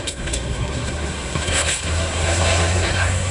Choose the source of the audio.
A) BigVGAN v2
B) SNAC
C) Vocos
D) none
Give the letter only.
B